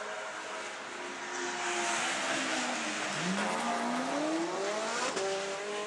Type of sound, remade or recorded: recorded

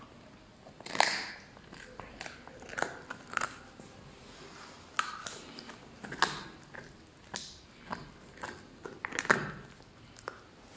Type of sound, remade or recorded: recorded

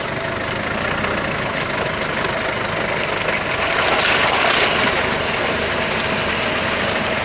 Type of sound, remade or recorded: recorded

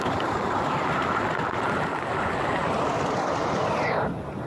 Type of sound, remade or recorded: recorded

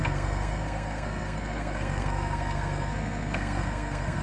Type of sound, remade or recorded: remade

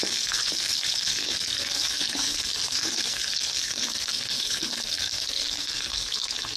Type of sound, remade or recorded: remade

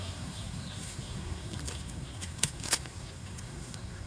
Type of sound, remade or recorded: remade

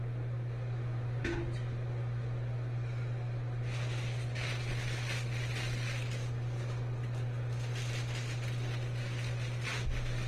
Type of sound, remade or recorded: recorded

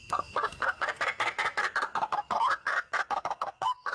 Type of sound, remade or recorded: remade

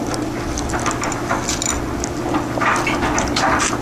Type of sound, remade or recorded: recorded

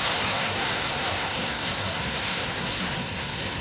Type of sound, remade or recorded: remade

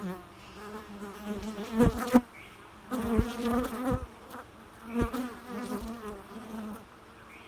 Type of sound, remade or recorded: recorded